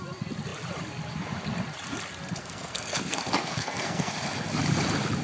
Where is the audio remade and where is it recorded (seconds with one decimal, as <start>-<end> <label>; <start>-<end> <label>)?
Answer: 0.0-2.4 recorded; 2.4-4.1 remade; 4.1-5.2 recorded